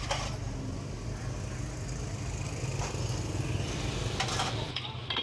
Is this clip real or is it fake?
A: real